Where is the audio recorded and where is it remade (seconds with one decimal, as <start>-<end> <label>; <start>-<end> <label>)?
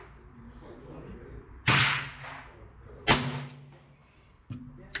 0.0-5.0 recorded